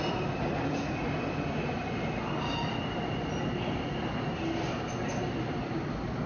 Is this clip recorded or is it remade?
recorded